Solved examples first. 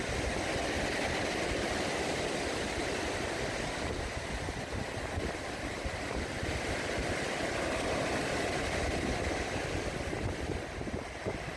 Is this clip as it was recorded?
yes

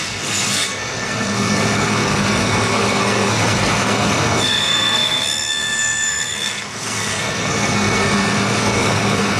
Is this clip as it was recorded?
no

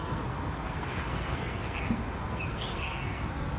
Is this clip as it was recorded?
no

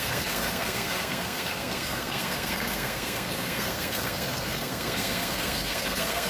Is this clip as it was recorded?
no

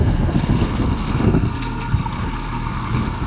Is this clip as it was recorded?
no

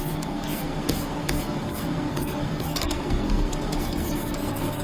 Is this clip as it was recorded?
no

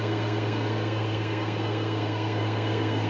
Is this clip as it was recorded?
no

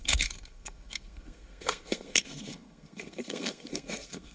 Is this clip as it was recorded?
no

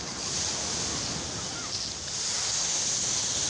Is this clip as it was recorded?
yes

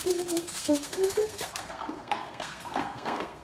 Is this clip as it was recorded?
no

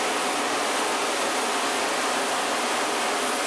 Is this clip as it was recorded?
yes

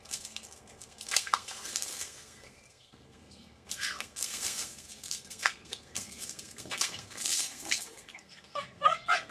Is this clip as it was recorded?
no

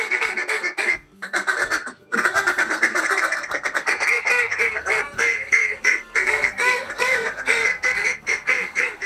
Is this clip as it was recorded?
no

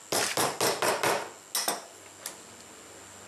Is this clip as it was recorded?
yes